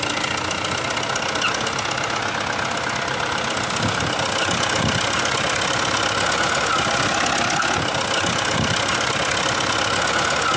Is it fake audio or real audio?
real